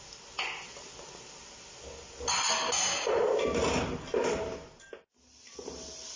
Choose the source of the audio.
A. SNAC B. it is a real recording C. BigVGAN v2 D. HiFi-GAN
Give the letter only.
B